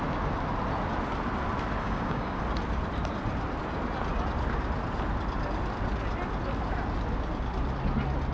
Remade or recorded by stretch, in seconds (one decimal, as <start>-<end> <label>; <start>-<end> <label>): 0.0-1.8 recorded; 1.8-2.4 remade; 2.4-8.3 recorded